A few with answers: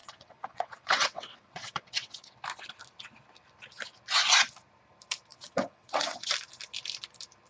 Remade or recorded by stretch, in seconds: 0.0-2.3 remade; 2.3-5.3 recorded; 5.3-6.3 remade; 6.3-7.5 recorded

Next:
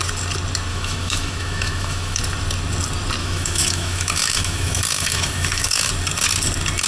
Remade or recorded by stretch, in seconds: 0.0-0.7 recorded; 0.7-2.2 remade; 2.2-3.2 recorded; 3.2-5.9 remade; 5.9-6.9 recorded

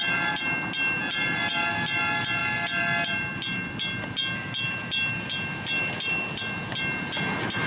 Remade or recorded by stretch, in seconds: 0.0-7.7 recorded